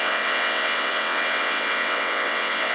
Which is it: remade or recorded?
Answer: remade